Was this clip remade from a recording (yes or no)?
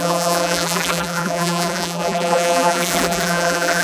yes